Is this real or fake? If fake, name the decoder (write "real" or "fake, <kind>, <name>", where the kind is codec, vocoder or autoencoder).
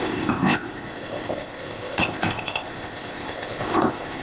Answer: fake, codec, ZipCodec